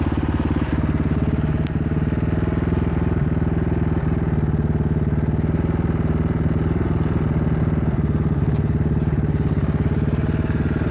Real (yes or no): yes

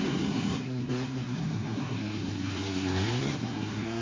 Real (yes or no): no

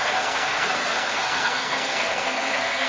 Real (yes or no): no